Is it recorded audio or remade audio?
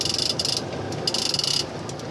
recorded